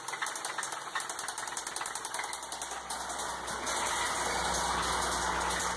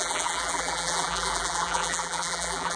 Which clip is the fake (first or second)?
second